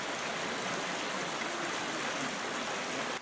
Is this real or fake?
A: real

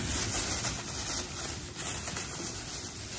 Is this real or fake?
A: real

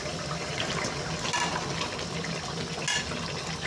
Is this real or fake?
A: real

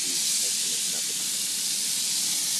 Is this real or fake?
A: real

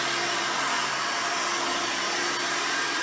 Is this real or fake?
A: real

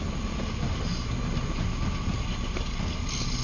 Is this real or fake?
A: real